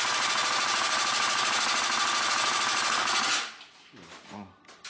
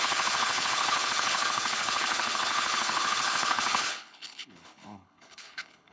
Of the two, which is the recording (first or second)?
first